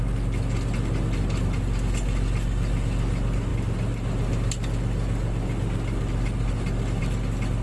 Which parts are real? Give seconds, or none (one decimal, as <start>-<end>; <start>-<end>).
0.0-7.6